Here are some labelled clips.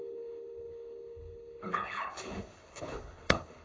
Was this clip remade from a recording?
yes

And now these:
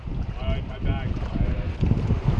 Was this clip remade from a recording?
no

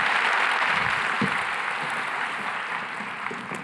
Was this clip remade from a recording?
no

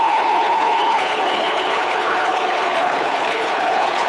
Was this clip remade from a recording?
yes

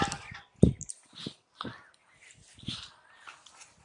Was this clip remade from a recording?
no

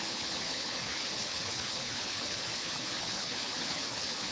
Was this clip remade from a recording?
yes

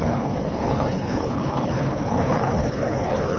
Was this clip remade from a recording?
yes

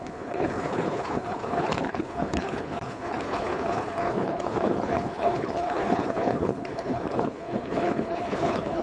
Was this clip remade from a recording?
yes